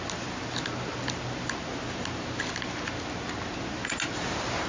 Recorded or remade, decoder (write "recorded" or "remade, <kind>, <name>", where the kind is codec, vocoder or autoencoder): recorded